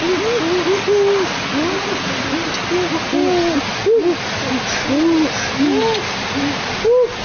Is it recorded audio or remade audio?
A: recorded